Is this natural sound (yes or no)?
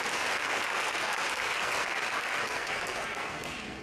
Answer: no